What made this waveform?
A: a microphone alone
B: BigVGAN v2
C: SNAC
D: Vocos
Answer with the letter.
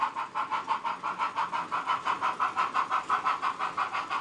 A